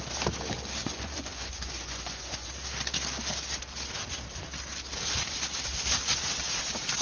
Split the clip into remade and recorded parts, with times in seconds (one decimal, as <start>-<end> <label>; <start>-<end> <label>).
0.0-0.8 recorded; 0.8-2.5 remade; 2.5-7.0 recorded